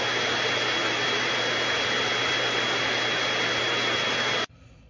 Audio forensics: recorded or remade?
recorded